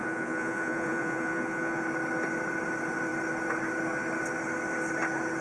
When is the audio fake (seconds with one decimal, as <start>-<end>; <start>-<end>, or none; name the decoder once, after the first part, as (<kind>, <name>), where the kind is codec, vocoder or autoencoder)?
0.0-1.8 (vocoder, Vocos)